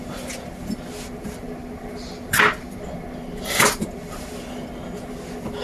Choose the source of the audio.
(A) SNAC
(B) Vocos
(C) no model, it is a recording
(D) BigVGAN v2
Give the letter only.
C